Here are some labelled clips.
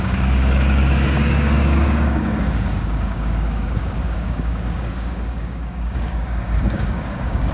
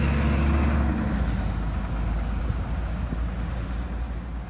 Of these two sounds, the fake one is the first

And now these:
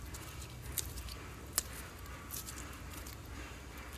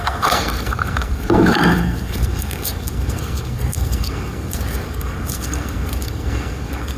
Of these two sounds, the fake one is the second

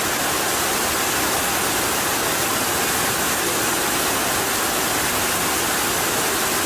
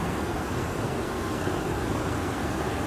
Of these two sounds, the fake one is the second